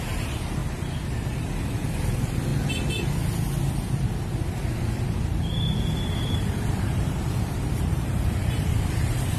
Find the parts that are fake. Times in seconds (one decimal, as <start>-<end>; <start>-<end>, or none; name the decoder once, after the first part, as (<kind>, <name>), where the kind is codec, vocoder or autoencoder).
0.0-0.6 (vocoder, BigVGAN v2); 1.1-2.5; 6.3-9.4